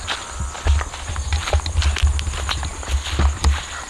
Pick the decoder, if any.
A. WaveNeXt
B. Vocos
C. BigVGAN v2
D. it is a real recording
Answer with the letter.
D